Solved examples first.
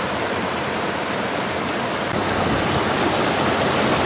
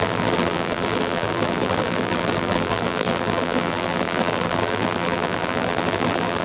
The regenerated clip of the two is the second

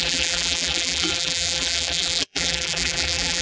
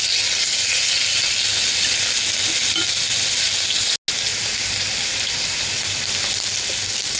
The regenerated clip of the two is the first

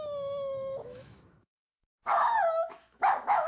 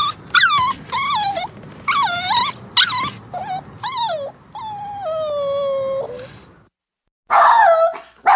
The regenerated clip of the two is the first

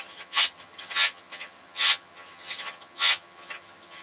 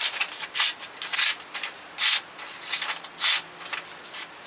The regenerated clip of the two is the first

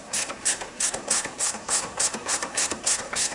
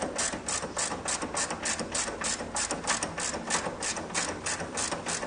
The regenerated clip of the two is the first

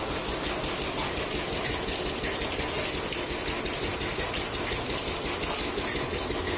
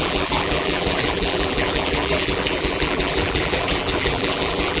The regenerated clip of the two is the second